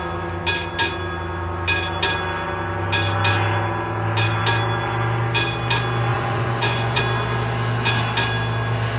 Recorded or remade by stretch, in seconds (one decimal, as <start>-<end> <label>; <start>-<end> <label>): 0.0-6.1 recorded; 6.1-7.0 remade; 7.0-9.0 recorded